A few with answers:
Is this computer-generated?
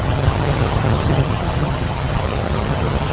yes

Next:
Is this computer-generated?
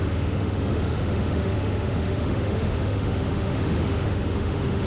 yes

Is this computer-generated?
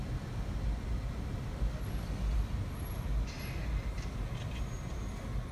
no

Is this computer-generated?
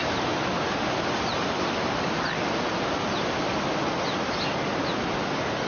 no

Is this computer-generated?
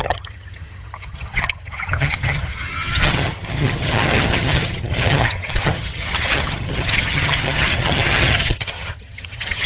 yes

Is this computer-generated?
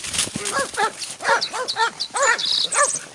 no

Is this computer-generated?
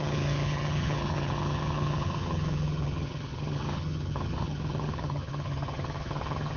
yes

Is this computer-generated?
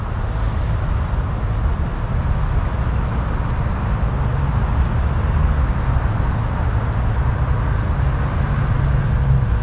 no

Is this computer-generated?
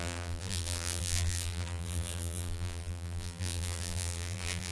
yes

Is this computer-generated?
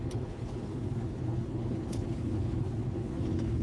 yes